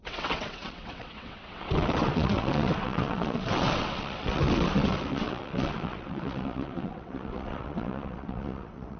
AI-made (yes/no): yes